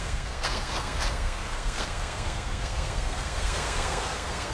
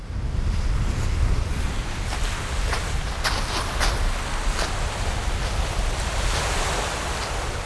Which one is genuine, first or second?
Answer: second